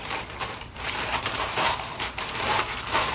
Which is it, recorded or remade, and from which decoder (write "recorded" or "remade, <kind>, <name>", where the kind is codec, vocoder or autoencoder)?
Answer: remade, vocoder, BigVGAN v2